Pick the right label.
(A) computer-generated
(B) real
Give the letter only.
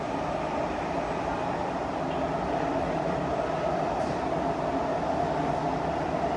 B